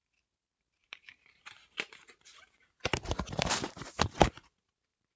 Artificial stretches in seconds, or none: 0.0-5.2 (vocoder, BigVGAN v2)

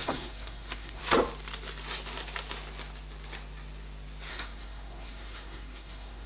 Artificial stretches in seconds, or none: 0.0-1.0 (codec, SNAC); 4.3-6.3